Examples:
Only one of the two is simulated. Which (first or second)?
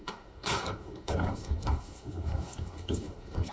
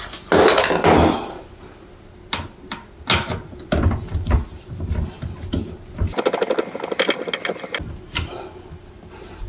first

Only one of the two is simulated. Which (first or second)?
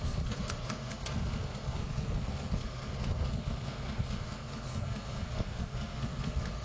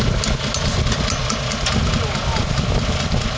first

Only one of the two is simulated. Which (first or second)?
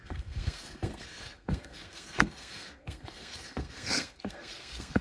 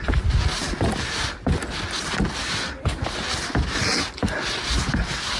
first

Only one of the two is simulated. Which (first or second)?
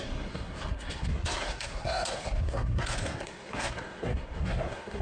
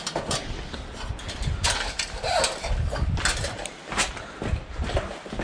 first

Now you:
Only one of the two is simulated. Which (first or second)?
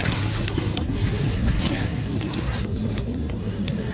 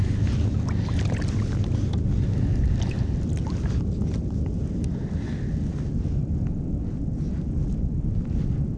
first